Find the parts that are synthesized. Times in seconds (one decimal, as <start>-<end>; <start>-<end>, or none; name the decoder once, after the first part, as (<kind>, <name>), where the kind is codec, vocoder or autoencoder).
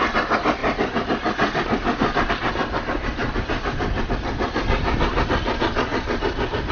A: 0.6-2.3 (vocoder, BigVGAN v2); 5.9-6.7